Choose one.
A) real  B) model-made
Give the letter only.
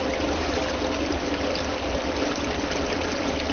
A